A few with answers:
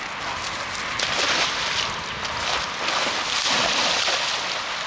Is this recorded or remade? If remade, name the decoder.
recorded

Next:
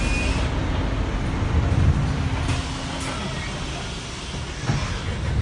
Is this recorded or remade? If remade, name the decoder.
recorded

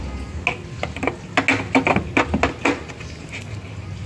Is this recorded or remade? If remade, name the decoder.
recorded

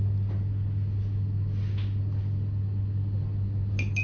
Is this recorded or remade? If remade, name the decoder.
recorded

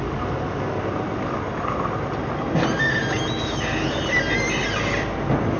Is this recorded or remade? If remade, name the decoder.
recorded